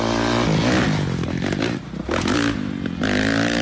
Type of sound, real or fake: real